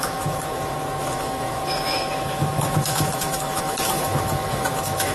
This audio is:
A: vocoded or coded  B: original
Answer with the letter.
A